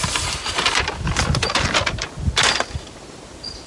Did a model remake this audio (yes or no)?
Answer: yes